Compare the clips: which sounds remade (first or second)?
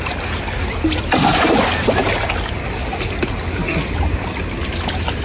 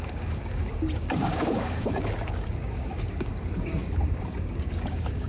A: second